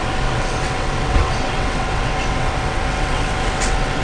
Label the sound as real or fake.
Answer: fake